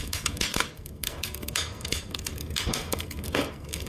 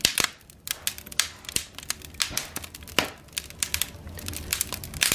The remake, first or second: first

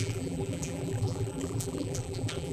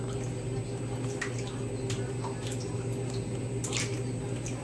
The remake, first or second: first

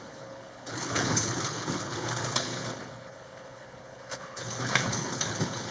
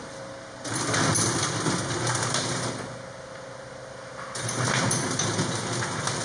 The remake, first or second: first